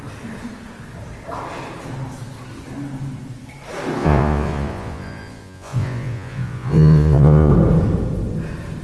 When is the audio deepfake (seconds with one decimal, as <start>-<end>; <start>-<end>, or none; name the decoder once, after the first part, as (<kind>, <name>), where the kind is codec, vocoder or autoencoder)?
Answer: 4.0-7.5 (vocoder, Vocos)